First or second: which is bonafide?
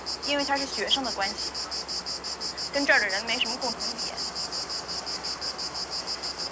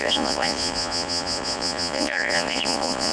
first